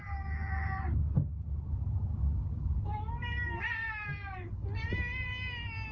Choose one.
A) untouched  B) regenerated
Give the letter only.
A